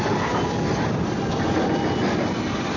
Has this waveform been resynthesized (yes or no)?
no